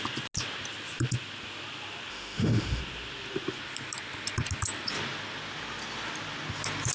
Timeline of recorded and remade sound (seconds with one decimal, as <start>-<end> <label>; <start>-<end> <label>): 0.0-2.1 recorded; 2.1-2.8 remade; 2.8-6.9 recorded